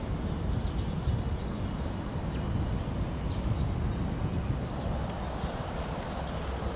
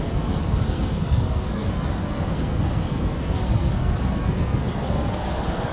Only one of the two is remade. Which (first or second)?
second